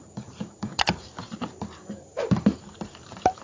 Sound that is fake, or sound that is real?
fake